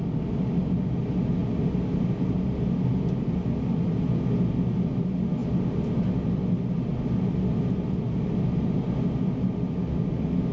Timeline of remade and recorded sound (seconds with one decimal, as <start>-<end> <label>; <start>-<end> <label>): 0.0-10.5 recorded